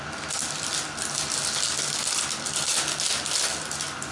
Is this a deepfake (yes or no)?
no